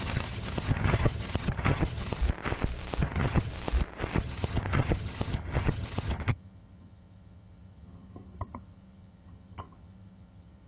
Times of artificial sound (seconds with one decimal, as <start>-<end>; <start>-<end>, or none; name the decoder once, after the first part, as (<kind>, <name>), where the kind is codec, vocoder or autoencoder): 0.0-2.2 (vocoder, HiFi-GAN); 3.0-3.5; 4.2-10.7